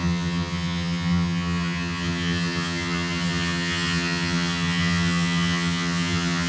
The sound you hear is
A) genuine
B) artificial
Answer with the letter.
B